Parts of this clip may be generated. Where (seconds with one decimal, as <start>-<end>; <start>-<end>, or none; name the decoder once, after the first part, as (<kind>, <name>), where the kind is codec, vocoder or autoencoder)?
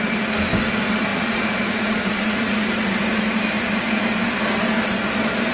1.1-3.2 (vocoder, Vocos)